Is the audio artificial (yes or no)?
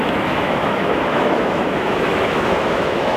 yes